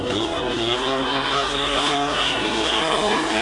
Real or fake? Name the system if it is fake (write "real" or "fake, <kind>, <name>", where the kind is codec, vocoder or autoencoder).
fake, codec, SNAC